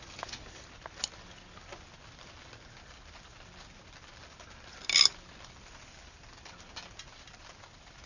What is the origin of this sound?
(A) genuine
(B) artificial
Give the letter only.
A